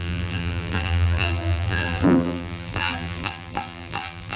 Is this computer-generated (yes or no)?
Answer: yes